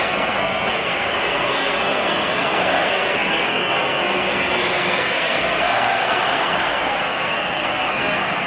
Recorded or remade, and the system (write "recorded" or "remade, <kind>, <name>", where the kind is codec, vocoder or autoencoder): remade, codec, SNAC